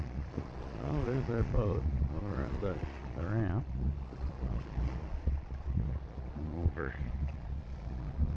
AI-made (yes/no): yes